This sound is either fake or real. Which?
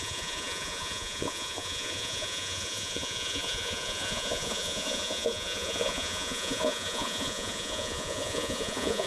fake